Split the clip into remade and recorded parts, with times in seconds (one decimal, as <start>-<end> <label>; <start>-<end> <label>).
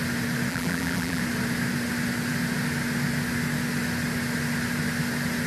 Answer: 0.0-0.5 recorded; 0.5-1.2 remade; 1.2-5.5 recorded